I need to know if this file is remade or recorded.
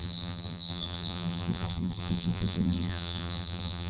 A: remade